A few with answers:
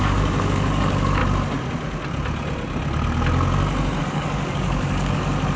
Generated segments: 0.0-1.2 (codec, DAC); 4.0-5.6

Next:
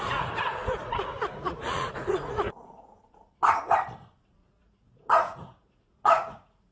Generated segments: 0.0-3.2 (vocoder, Vocos); 4.3-6.7

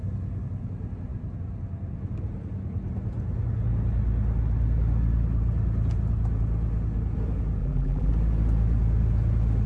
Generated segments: 7.6-8.1 (vocoder, BigVGAN v2)